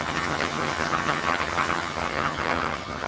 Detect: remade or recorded remade